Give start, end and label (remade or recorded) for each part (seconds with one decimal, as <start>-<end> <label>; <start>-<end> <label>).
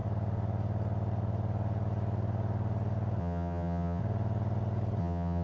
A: 0.0-3.2 recorded; 3.2-4.0 remade; 4.0-5.0 recorded; 5.0-5.4 remade